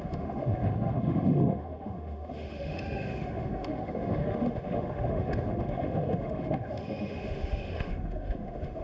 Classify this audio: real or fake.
fake